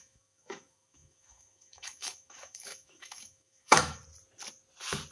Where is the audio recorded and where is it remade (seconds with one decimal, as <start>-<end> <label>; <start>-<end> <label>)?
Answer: 0.0-4.0 remade; 4.0-5.1 recorded